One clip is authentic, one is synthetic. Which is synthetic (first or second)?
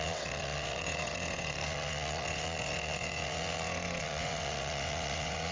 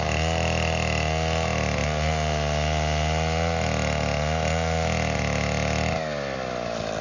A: first